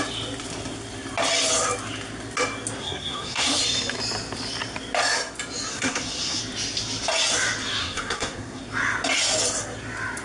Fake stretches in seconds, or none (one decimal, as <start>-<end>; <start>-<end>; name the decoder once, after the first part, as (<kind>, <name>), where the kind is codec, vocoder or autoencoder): 2.8-3.6 (codec, SNAC); 5.7-6.4; 7.8-8.6